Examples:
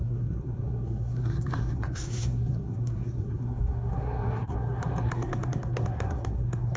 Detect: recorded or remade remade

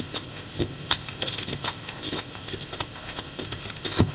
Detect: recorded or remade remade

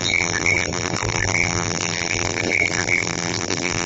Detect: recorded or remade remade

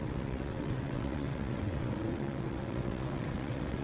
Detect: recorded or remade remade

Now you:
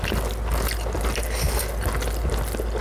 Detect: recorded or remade recorded